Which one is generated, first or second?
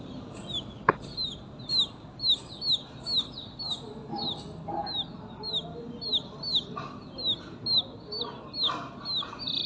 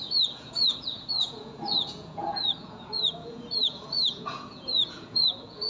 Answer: second